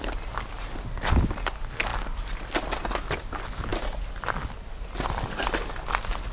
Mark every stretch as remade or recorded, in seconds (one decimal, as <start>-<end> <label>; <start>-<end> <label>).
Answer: 0.0-6.3 recorded